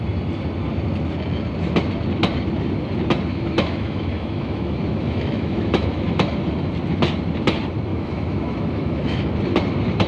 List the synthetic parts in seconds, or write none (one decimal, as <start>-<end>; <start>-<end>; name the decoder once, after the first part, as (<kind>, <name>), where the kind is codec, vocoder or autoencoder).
3.3-6.3 (autoencoder, DAC-VAE); 7.9-9.3

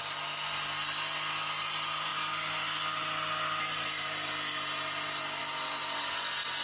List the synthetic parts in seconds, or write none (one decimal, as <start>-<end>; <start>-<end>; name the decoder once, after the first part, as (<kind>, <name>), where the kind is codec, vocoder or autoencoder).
none

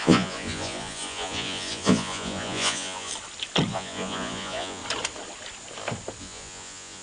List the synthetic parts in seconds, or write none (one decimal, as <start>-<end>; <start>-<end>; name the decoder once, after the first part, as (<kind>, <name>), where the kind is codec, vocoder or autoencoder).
0.0-3.1 (vocoder, Vocos); 3.7-4.8; 6.2-7.0

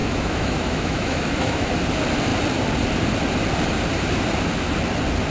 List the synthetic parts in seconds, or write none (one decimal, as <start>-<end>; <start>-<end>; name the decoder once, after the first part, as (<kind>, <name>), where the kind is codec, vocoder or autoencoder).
0.0-1.8 (autoencoder, DAC-VAE)